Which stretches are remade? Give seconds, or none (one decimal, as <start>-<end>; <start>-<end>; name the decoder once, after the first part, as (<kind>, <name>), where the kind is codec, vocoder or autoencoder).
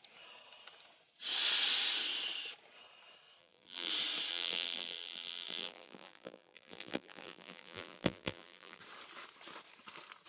3.4-3.9 (vocoder, BigVGAN v2); 4.3-8.8